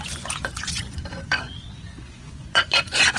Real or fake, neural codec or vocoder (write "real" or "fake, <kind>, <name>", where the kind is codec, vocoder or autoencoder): fake, vocoder, Vocos